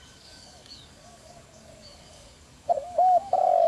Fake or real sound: fake